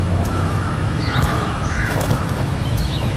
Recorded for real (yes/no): no